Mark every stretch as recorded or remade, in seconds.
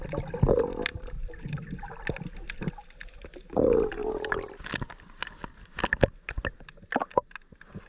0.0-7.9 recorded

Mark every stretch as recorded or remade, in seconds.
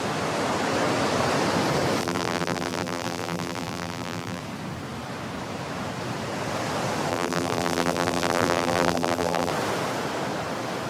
0.0-2.0 recorded; 2.0-4.4 remade; 4.4-7.1 recorded; 7.1-9.5 remade; 9.5-10.9 recorded